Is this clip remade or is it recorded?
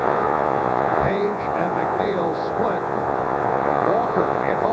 remade